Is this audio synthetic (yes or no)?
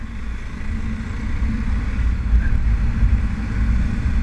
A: no